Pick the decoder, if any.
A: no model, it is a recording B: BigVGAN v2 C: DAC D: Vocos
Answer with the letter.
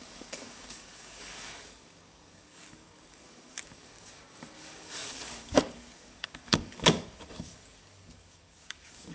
C